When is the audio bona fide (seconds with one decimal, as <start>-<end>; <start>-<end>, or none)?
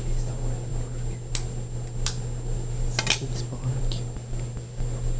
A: 0.0-5.2